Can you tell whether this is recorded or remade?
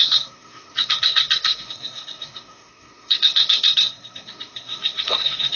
remade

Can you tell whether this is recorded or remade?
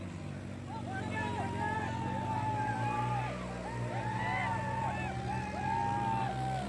recorded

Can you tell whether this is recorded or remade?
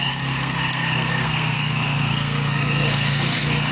remade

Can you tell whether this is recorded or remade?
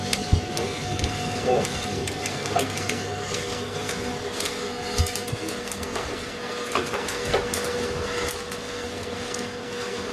remade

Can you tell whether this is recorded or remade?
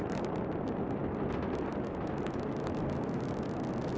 recorded